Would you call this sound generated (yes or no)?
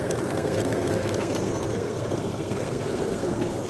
yes